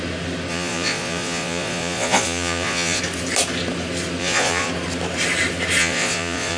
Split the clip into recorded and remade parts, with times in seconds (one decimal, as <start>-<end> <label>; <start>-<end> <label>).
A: 0.0-0.5 recorded; 0.5-3.0 remade; 3.0-4.2 recorded; 4.2-4.7 remade; 4.7-5.8 recorded; 5.8-6.6 remade